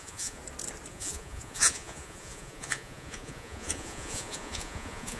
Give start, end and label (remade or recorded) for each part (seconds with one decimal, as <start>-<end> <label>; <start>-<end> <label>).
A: 0.0-0.4 remade; 0.4-0.9 recorded; 0.9-5.2 remade